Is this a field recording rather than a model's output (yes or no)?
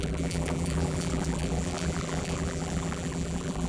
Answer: no